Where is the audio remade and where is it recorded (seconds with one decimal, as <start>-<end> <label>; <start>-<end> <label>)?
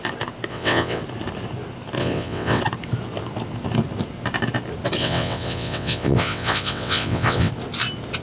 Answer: 0.0-0.5 recorded; 0.5-1.0 remade; 1.0-2.0 recorded; 2.0-2.6 remade; 2.6-5.0 recorded; 5.0-7.5 remade; 7.5-8.2 recorded